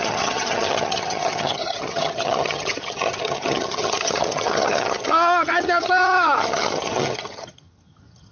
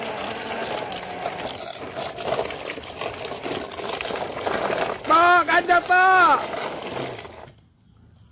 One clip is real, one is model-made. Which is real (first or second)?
second